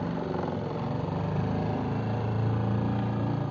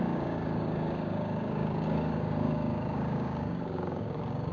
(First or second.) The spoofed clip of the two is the second